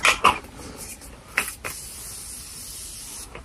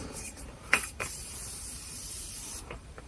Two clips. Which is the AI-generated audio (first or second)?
second